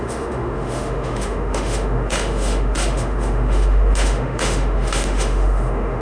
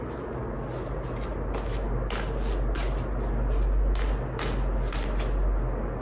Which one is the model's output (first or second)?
first